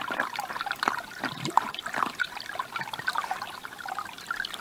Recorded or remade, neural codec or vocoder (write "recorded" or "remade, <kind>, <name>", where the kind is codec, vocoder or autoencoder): recorded